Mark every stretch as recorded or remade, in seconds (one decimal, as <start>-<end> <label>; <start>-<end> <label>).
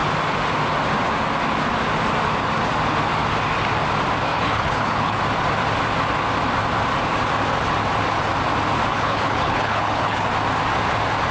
0.0-4.3 recorded; 4.3-5.2 remade; 5.2-8.9 recorded; 8.9-10.3 remade; 10.3-11.3 recorded